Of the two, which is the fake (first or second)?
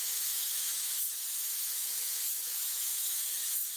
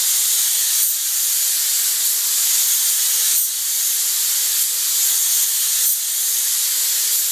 first